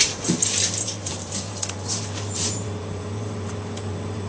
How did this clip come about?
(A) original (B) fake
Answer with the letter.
B